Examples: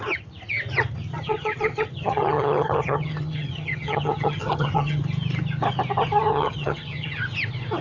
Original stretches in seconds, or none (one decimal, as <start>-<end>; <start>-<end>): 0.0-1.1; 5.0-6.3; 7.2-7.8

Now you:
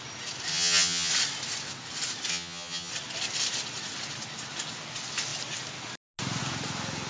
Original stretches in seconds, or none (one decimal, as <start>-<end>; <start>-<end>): 0.0-0.5; 1.1-2.3; 2.9-7.1

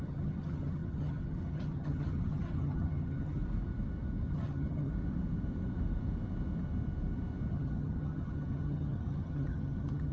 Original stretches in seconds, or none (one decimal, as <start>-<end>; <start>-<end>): 3.4-4.3; 4.9-7.5

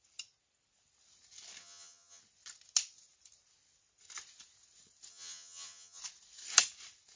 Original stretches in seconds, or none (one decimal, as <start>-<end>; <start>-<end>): 0.0-1.6; 2.2-5.1; 6.0-7.2